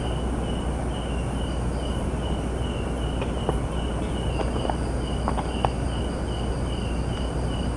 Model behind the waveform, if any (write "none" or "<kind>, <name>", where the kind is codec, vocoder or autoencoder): none